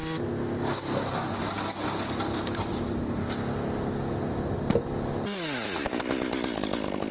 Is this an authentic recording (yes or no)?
yes